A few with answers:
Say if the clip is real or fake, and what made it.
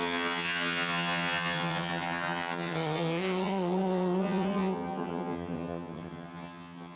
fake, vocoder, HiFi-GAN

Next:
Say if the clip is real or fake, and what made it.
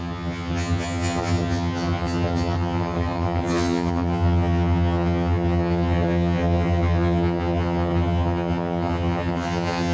fake, vocoder, HiFi-GAN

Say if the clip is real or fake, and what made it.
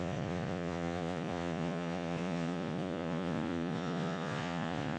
fake, vocoder, Vocos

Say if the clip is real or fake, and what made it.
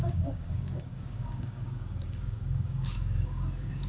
fake, codec, DAC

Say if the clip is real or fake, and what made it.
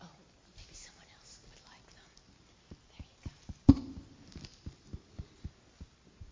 real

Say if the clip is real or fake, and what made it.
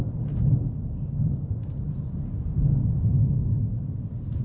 real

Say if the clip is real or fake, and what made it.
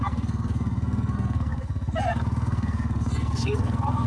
fake, codec, SNAC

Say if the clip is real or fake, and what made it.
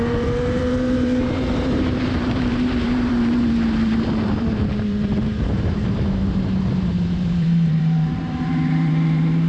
fake, vocoder, BigVGAN v2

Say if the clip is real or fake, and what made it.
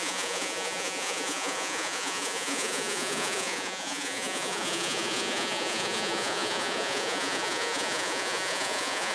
fake, vocoder, Vocos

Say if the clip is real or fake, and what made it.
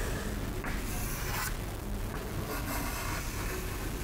real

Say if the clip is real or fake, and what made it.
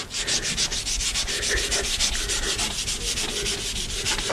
real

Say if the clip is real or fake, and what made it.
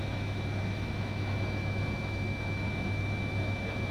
fake, autoencoder, DAC-VAE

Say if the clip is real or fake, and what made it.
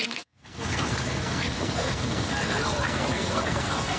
fake, codec, SNAC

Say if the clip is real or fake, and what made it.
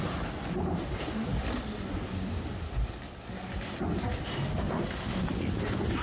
real